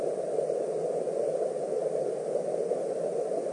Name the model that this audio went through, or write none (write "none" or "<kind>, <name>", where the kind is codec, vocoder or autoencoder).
none